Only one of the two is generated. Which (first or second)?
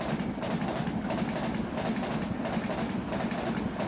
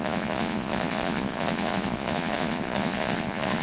second